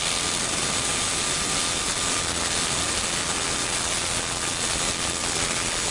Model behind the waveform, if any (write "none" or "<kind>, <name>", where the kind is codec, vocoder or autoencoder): none